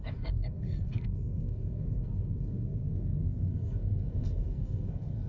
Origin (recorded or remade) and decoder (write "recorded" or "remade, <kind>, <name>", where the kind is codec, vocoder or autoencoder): remade, codec, SNAC